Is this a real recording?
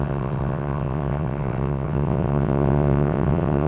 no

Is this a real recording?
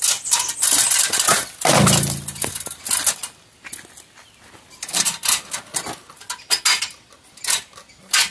yes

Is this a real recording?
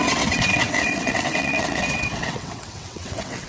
no